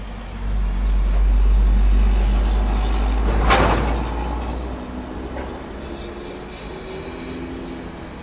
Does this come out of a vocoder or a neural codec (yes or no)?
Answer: no